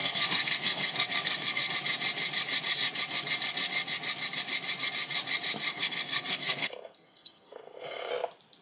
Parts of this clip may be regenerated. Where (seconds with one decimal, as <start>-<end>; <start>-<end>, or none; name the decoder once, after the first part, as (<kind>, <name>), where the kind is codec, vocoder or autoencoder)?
0.0-1.7 (codec, SNAC); 5.7-8.1